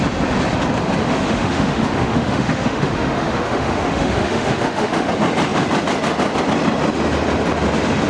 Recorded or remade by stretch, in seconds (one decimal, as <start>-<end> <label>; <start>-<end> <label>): 0.0-1.0 recorded; 1.0-5.1 remade; 5.1-8.1 recorded